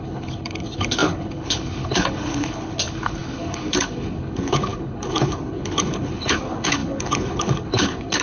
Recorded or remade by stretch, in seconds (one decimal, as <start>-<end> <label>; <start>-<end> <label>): 0.0-8.2 remade